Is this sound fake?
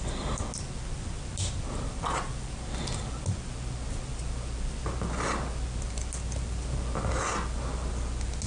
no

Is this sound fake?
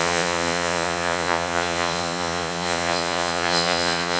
yes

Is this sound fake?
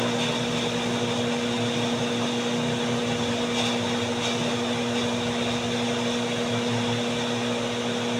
no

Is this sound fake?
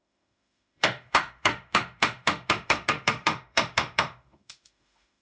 yes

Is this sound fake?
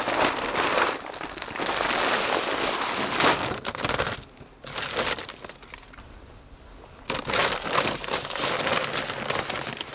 no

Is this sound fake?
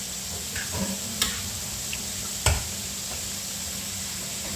yes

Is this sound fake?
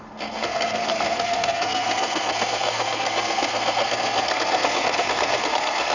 yes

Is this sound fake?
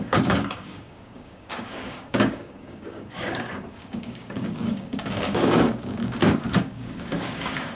yes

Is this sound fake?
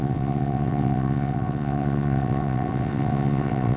yes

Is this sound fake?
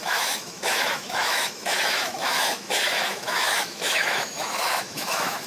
yes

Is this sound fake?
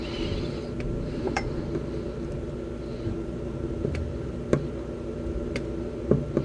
yes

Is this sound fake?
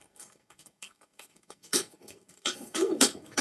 yes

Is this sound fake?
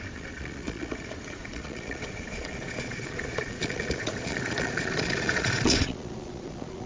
yes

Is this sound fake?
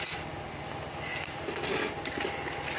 no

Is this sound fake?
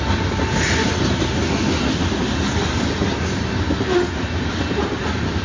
no